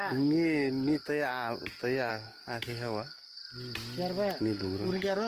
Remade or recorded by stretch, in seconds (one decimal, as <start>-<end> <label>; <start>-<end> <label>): 0.0-1.0 remade; 1.0-2.1 recorded; 2.1-3.4 remade; 3.4-4.4 recorded; 4.4-5.3 remade